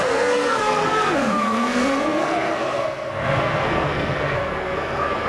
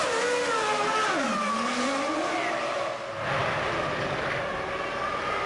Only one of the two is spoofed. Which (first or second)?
first